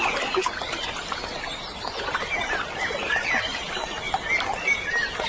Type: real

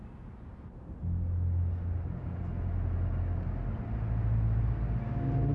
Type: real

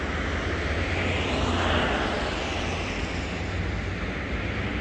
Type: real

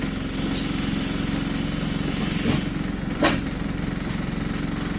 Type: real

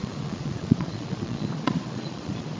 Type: fake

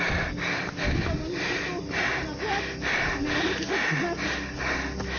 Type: real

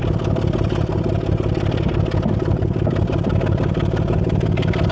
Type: real